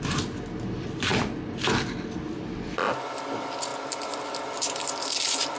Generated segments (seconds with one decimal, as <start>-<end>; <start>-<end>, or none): none